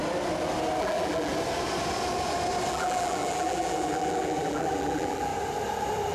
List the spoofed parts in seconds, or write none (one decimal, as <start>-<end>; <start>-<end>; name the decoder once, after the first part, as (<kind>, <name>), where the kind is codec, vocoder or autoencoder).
0.8-1.3 (vocoder, BigVGAN v2); 2.7-5.3